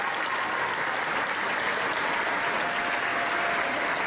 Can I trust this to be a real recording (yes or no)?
yes